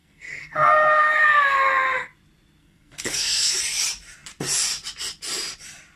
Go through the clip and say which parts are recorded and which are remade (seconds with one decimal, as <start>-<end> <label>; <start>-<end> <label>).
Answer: 0.0-1.2 remade; 1.2-2.6 recorded; 2.6-3.6 remade; 3.6-6.0 recorded